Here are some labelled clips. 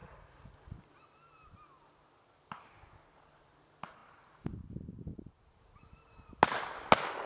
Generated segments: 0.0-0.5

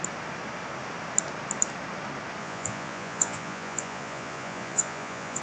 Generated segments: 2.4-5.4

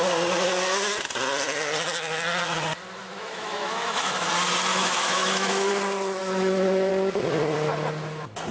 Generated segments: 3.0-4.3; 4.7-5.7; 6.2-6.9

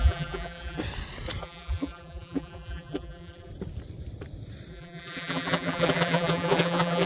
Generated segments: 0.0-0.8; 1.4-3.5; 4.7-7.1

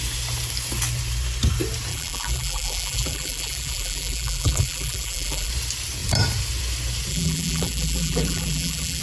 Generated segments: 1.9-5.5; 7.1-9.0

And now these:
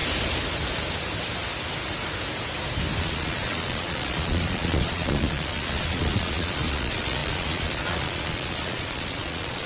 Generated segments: 3.0-9.7